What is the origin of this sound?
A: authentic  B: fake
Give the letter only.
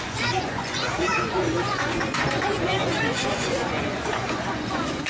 B